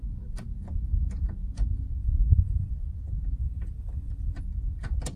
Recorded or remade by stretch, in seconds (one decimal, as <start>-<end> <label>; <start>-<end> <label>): 0.0-2.0 recorded; 2.0-2.7 remade; 2.7-3.4 recorded; 3.4-4.4 remade; 4.4-5.2 recorded